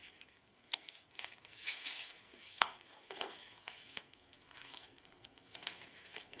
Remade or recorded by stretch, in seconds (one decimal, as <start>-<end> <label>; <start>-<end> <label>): 0.0-6.4 remade